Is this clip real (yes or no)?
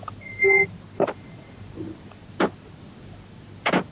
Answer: no